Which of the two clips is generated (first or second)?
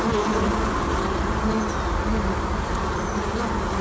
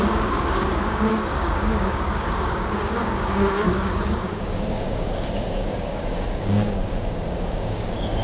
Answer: second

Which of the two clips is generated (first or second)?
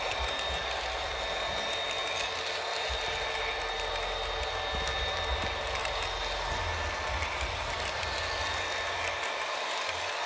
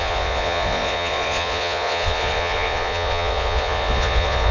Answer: second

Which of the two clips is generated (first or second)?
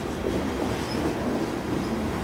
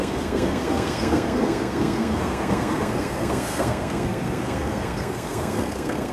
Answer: second